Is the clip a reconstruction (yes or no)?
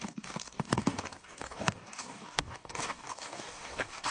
yes